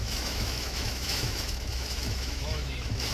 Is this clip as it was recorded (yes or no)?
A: no